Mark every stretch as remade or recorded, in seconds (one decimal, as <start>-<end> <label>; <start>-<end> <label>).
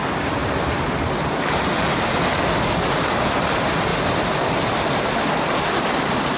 0.0-6.4 recorded